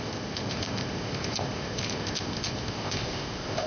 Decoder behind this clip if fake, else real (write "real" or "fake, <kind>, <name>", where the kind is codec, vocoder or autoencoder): fake, codec, ZipCodec